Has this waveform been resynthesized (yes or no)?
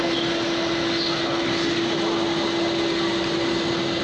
no